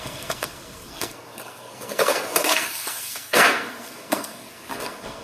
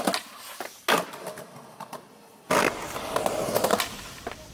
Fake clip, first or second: first